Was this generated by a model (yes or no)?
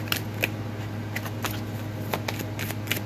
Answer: no